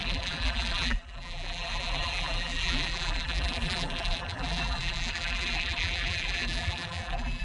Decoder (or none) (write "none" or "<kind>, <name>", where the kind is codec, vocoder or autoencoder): vocoder, BigVGAN v2